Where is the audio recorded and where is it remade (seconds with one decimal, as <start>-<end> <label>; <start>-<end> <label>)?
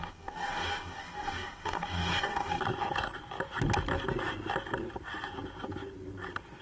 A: 0.0-2.6 remade; 2.6-6.6 recorded